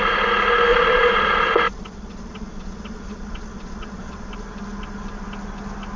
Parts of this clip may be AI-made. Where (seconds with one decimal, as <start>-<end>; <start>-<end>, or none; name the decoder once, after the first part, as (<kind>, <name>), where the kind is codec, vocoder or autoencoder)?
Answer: 0.7-4.3 (vocoder, Vocos)